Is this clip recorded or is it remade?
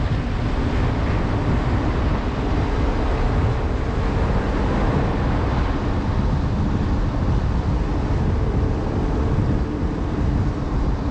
recorded